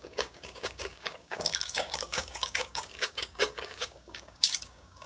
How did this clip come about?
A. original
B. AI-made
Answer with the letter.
B